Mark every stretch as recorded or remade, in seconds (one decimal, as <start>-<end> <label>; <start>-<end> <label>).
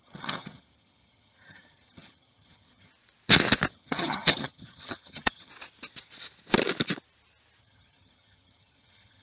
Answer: 0.0-2.9 remade; 2.9-3.7 recorded; 3.7-5.5 remade; 5.5-7.6 recorded; 7.6-9.2 remade